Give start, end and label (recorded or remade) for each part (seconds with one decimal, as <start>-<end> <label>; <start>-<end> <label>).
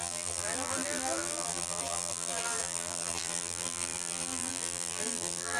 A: 0.0-5.6 remade